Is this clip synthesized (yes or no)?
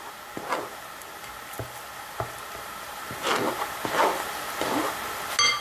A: no